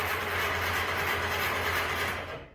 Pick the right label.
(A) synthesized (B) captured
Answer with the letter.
B